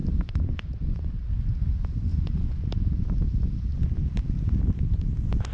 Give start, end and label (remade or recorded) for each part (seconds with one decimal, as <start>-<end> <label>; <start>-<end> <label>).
0.0-1.1 remade; 1.1-2.1 recorded; 2.1-2.6 remade; 2.6-5.5 recorded